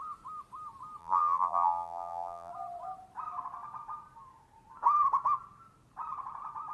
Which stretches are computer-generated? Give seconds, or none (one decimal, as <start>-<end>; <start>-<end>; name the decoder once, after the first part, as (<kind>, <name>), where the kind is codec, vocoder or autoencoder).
1.0-2.5 (vocoder, BigVGAN v2)